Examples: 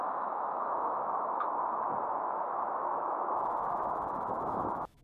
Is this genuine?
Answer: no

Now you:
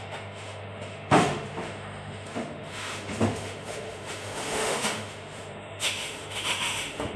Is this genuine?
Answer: no